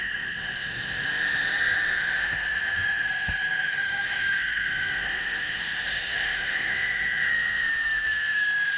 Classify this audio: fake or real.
fake